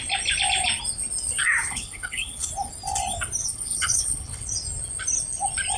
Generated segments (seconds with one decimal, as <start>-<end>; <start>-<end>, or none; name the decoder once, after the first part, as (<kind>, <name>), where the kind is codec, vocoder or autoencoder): 1.6-2.5 (codec, HILCodec); 3.4-4.5